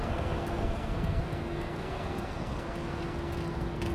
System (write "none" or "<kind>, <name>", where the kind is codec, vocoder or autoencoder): codec, SNAC